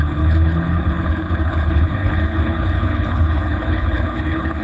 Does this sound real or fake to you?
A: fake